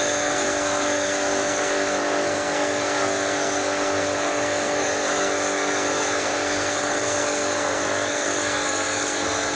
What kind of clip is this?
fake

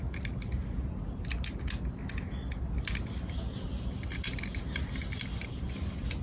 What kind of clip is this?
real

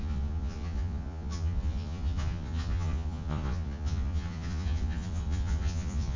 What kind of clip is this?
fake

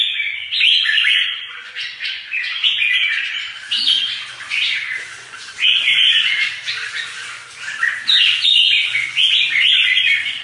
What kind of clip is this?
fake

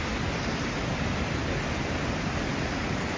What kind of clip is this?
real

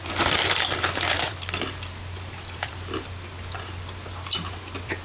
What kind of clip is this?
fake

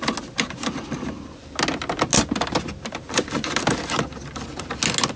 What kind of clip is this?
real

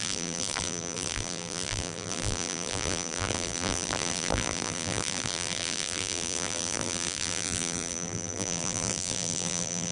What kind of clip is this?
fake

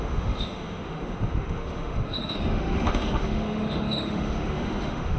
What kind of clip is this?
fake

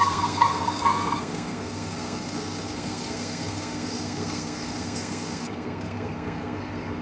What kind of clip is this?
fake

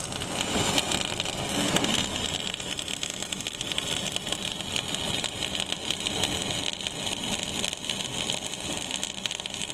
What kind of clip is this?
real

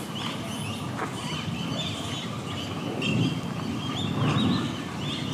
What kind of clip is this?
real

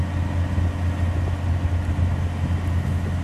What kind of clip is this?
real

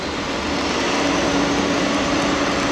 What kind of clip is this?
real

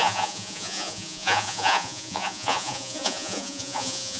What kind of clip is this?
fake